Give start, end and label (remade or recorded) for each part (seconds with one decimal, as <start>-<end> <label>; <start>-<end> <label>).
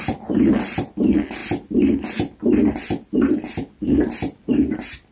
0.0-5.1 recorded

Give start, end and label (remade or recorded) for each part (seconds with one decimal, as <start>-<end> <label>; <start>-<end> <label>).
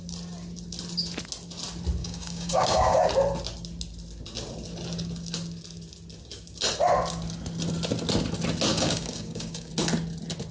0.0-2.0 recorded; 2.0-3.1 remade; 3.1-8.7 recorded; 8.7-9.7 remade; 9.7-10.5 recorded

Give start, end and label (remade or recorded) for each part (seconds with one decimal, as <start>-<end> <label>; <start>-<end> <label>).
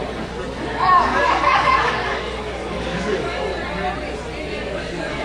0.0-0.6 recorded; 0.6-3.5 remade; 3.5-4.6 recorded; 4.6-5.2 remade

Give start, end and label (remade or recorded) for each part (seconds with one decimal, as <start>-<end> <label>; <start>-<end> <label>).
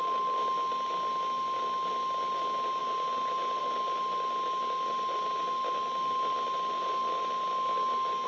0.0-8.3 recorded